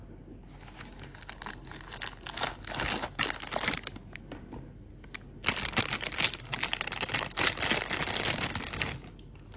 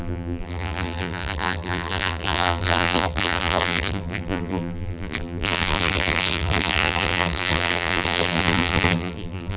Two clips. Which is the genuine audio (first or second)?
first